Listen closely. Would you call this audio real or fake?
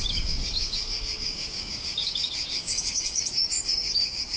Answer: fake